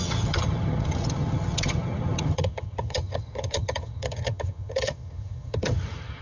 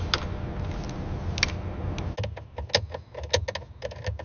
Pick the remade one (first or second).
first